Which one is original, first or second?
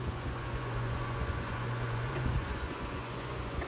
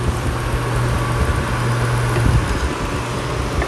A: second